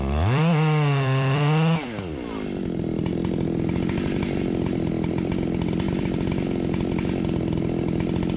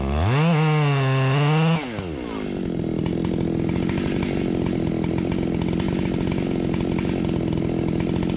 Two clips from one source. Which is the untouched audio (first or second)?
second